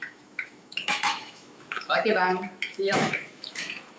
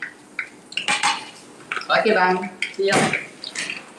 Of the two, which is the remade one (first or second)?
first